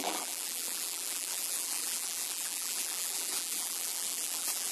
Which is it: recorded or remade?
remade